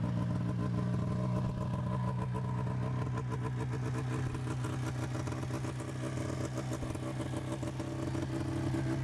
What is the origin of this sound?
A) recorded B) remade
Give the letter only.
A